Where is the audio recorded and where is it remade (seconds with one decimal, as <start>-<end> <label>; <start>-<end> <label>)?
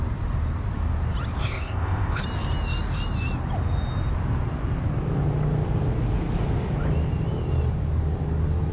0.0-1.4 recorded; 1.4-2.2 remade; 2.2-8.7 recorded